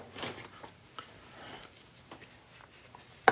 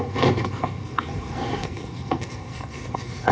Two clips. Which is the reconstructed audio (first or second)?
second